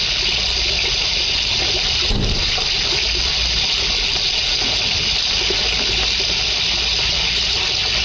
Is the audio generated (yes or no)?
no